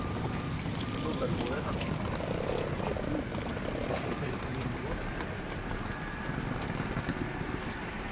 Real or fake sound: fake